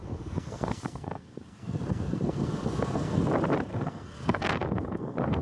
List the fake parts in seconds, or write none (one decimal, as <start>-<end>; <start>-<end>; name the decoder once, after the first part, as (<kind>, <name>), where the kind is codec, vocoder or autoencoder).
0.0-3.2 (codec, SNAC); 3.7-5.4